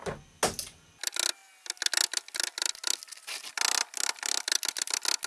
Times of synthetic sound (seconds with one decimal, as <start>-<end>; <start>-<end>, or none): none